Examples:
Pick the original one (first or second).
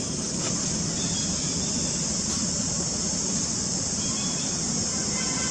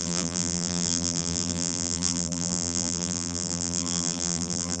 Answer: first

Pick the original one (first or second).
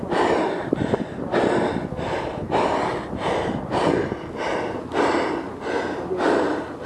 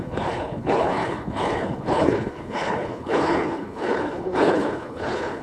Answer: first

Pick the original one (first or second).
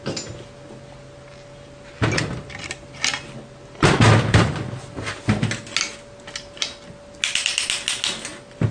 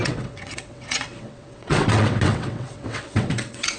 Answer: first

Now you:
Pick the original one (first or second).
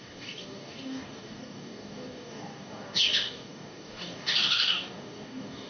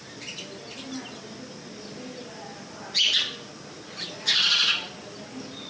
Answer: second